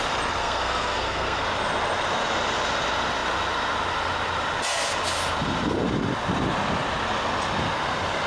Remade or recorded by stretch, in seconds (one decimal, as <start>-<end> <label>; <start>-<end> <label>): 0.0-0.4 recorded; 0.4-1.4 remade; 1.4-8.3 recorded